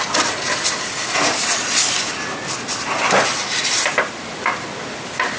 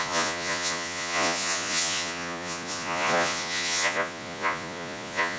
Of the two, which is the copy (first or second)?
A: second